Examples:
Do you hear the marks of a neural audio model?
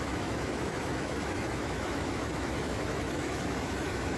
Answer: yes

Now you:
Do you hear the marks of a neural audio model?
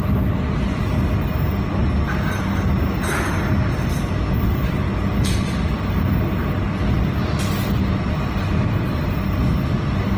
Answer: no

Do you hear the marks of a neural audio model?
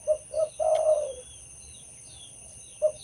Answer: no